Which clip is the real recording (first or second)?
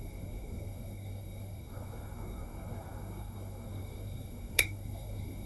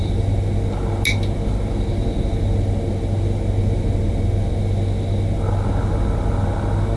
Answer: second